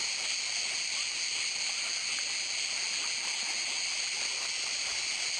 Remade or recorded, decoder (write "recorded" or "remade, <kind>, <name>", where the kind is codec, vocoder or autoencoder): recorded